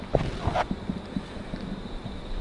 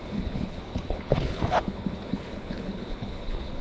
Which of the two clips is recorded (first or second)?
first